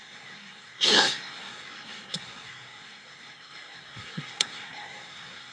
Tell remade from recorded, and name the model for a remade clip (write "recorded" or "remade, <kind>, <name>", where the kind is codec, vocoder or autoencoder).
remade, codec, SNAC